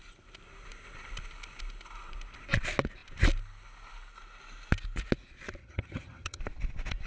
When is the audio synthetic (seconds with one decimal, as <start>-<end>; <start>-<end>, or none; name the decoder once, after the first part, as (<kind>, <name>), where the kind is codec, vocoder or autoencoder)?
5.6-6.4 (vocoder, HiFi-GAN)